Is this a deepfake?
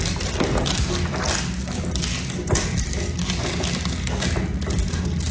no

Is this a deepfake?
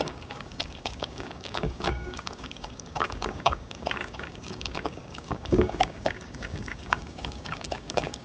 yes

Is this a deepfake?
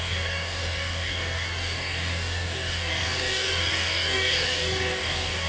yes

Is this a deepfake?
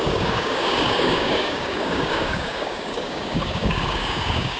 yes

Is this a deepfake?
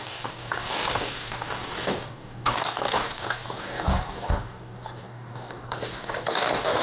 yes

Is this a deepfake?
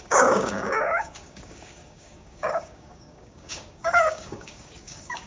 yes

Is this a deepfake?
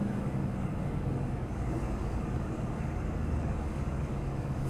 yes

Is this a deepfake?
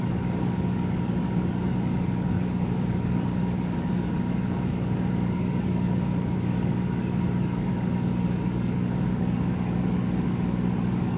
yes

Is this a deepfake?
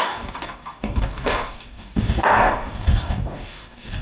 yes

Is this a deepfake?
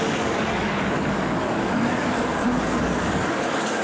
yes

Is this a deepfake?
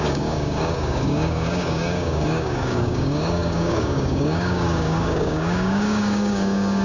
yes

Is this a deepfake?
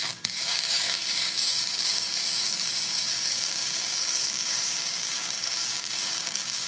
yes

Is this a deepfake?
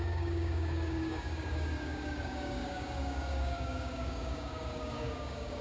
yes